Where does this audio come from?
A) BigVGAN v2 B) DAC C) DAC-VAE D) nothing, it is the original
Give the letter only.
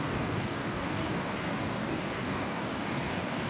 B